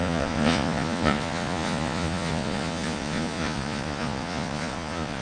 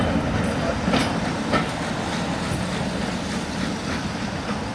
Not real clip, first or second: first